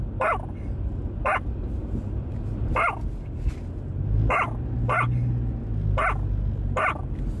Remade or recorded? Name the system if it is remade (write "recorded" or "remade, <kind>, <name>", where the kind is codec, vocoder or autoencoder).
recorded